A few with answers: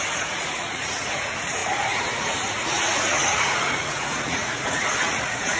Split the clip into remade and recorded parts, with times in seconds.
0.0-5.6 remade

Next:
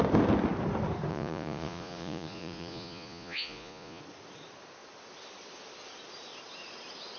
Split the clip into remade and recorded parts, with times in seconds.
0.0-1.1 recorded; 1.1-4.0 remade; 4.0-7.2 recorded

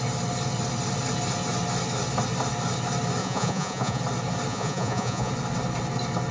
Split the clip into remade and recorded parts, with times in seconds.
0.0-3.2 recorded; 3.2-4.0 remade; 4.0-4.5 recorded; 4.5-5.3 remade; 5.3-6.3 recorded

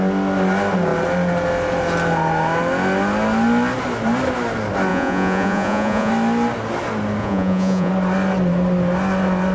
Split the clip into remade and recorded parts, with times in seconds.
0.0-4.9 recorded; 4.9-6.1 remade; 6.1-7.2 recorded; 7.2-7.9 remade; 7.9-9.5 recorded

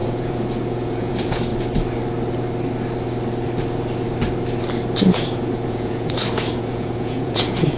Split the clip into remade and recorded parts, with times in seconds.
0.0-1.5 remade; 1.5-5.0 recorded; 5.0-7.8 remade

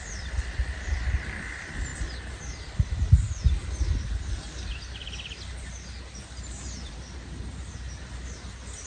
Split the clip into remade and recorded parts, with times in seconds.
0.0-8.9 recorded

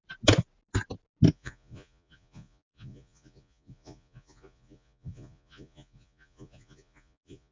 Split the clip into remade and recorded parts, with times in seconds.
0.0-1.3 recorded; 1.3-7.5 remade